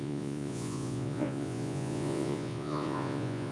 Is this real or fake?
fake